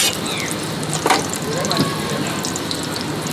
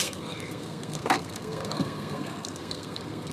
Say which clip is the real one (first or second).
first